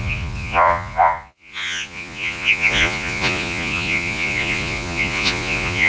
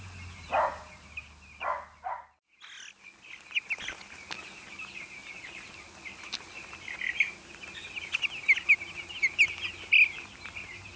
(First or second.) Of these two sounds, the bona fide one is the second